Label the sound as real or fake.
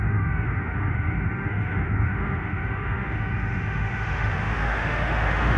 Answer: fake